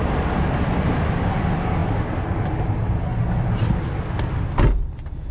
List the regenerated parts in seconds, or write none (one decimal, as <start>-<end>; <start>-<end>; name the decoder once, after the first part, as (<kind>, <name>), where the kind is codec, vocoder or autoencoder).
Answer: none

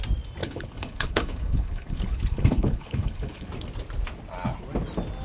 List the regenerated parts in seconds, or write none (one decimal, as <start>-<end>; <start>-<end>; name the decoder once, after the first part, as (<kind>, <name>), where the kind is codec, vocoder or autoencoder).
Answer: 0.4-3.5 (codec, HILCodec)

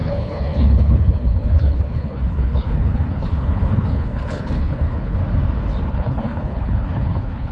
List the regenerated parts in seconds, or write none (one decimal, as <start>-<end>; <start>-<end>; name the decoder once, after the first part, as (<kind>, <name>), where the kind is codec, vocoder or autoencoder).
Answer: 0.0-5.2 (codec, HILCodec); 5.9-7.5

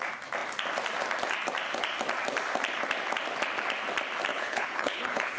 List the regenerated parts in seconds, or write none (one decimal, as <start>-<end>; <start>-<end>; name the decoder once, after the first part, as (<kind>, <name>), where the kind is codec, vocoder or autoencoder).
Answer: 4.3-5.4 (codec, HILCodec)

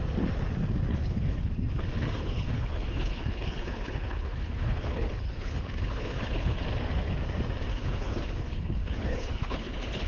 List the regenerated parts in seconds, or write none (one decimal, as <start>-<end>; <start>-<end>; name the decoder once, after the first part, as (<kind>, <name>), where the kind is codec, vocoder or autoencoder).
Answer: 0.9-1.5 (codec, HILCodec); 2.2-6.6; 7.7-10.1